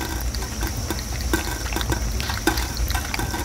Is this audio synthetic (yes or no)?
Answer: no